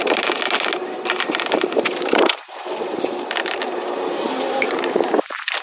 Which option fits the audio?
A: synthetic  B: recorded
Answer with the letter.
A